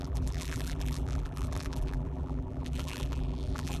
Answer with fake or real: fake